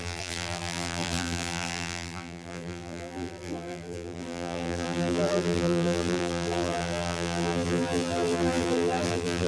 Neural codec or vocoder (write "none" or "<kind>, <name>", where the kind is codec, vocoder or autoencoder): vocoder, BigVGAN v2